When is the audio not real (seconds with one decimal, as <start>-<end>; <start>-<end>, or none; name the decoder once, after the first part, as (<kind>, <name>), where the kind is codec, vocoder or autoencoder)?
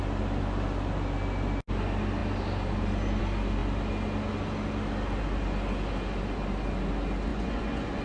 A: 7.3-8.0 (vocoder, Vocos)